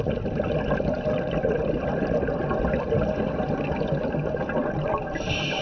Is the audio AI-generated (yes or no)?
no